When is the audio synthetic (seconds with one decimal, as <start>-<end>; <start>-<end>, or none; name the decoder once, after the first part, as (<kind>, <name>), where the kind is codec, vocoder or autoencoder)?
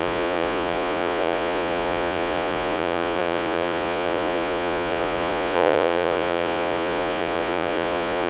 0.0-8.3 (vocoder, Vocos)